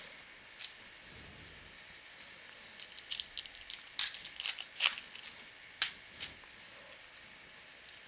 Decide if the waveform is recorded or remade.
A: recorded